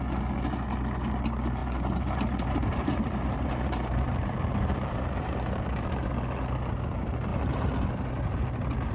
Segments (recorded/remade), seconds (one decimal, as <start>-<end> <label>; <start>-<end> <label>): 0.0-1.6 recorded; 1.6-6.1 remade; 6.1-7.3 recorded; 7.3-8.1 remade; 8.1-8.9 recorded